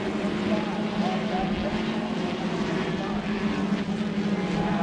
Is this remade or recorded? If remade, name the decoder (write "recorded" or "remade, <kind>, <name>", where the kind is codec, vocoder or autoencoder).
recorded